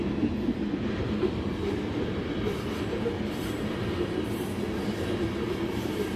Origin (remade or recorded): recorded